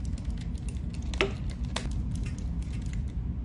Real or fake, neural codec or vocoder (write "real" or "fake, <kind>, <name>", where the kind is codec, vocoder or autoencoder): real